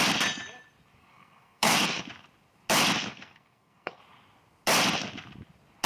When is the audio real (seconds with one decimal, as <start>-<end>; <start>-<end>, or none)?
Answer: 0.0-1.0; 2.0-3.1; 4.0-5.9